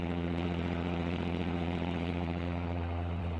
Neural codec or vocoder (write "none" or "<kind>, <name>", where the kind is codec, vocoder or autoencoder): vocoder, WaveNeXt